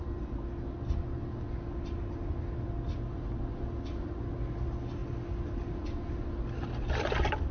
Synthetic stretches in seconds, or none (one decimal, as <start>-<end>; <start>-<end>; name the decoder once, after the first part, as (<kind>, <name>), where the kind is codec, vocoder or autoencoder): none